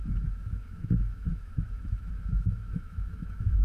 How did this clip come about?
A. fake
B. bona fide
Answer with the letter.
A